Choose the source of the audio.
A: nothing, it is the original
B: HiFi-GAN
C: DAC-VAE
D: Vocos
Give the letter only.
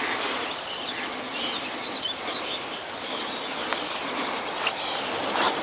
A